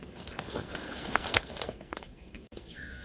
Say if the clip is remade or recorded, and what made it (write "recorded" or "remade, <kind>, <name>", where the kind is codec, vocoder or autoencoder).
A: remade, codec, SNAC